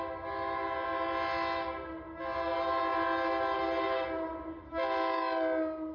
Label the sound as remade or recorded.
recorded